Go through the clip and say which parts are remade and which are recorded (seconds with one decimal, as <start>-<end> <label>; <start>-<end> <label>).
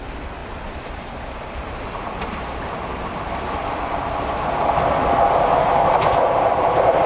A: 0.0-0.4 recorded; 0.4-4.7 remade; 4.7-7.1 recorded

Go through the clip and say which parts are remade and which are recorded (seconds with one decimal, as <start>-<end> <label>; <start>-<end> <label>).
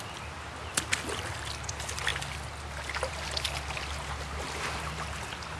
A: 0.0-5.6 recorded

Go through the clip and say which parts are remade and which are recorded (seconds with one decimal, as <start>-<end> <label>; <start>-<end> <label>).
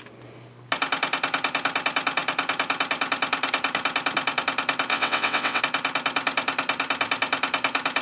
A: 0.0-4.9 recorded; 4.9-5.6 remade; 5.6-8.0 recorded